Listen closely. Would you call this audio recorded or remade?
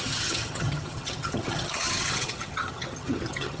remade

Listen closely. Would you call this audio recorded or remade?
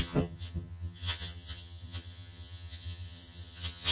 remade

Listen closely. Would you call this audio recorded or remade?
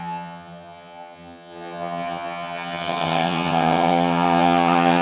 remade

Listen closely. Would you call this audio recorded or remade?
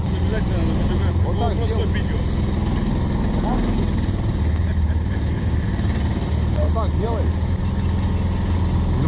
recorded